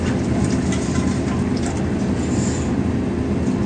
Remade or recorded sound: recorded